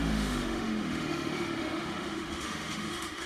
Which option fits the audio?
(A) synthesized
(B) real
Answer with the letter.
A